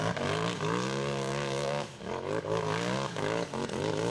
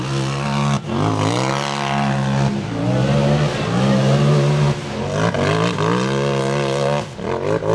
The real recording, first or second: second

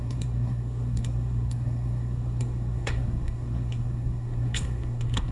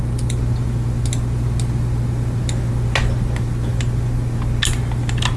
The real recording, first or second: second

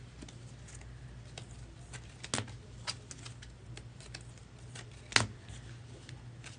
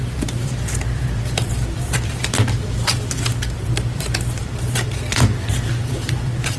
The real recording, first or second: first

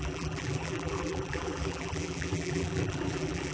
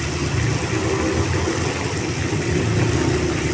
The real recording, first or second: second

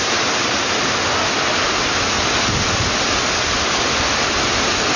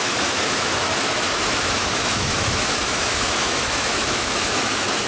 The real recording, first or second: first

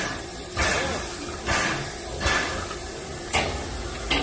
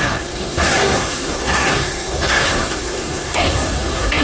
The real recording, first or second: first